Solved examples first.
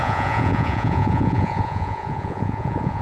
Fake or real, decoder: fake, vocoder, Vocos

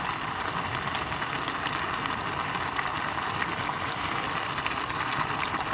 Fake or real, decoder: real